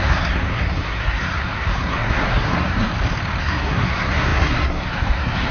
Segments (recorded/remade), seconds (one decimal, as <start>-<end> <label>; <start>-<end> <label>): 0.0-2.9 remade; 2.9-3.4 recorded; 3.4-5.5 remade